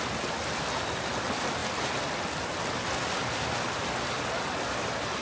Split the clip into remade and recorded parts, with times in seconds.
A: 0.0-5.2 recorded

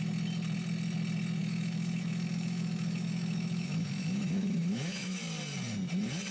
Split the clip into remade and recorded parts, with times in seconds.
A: 0.0-1.4 recorded; 1.4-5.2 remade; 5.2-6.3 recorded

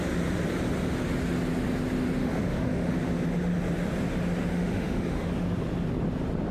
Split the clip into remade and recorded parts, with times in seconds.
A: 0.0-2.2 recorded; 2.2-2.9 remade; 2.9-4.5 recorded; 4.5-5.3 remade; 5.3-6.5 recorded

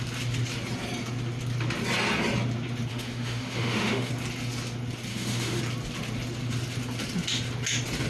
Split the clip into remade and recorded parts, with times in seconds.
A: 0.0-2.9 recorded; 2.9-4.1 remade; 4.1-5.1 recorded; 5.1-5.6 remade; 5.6-8.1 recorded

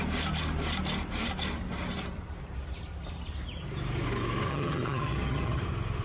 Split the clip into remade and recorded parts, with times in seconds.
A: 0.0-4.5 recorded; 4.5-5.6 remade; 5.6-6.0 recorded

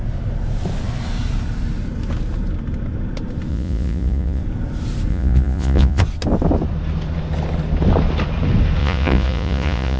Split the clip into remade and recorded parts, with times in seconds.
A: 0.0-3.5 recorded; 3.5-4.4 remade; 4.4-5.1 recorded; 5.1-6.0 remade; 6.0-8.8 recorded; 8.8-10.0 remade